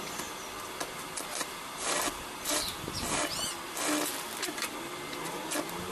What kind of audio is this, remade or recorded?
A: recorded